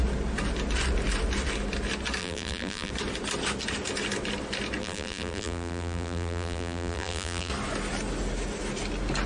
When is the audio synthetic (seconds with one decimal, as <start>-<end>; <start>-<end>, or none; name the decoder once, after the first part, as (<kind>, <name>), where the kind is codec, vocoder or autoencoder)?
2.2-2.9 (vocoder, BigVGAN v2); 4.8-7.5